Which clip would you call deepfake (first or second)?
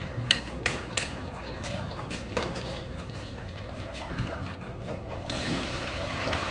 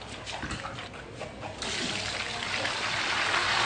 first